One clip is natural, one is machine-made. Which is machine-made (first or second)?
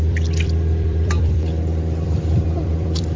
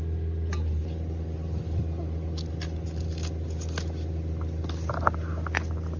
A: first